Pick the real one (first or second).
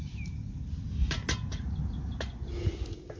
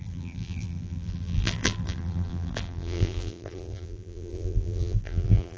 first